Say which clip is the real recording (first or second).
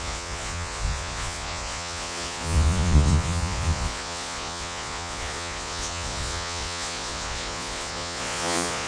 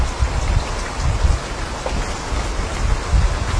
second